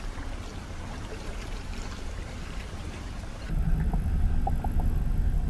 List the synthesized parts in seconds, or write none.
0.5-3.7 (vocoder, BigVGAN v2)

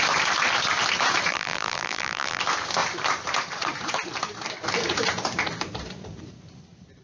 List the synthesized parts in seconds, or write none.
1.3-2.4 (vocoder, BigVGAN v2)

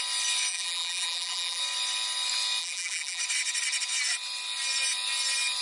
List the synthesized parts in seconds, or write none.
0.5-1.6 (vocoder, BigVGAN v2); 2.6-3.2

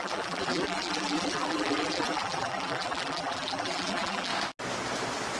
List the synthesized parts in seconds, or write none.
0.0-4.3 (vocoder, BigVGAN v2)

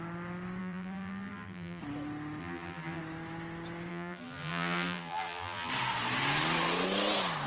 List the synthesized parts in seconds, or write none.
0.6-1.8 (vocoder, BigVGAN v2); 2.4-3.0; 3.9-5.7

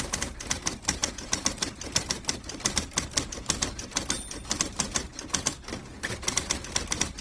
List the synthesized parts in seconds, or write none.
1.0-5.3 (vocoder, BigVGAN v2)

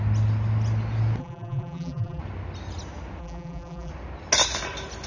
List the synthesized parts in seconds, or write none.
1.2-2.2 (vocoder, BigVGAN v2); 3.2-3.9